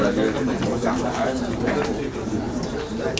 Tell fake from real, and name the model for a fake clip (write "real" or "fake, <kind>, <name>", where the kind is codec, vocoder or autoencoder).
fake, vocoder, BigVGAN v2